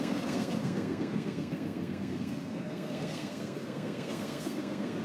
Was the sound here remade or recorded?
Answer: remade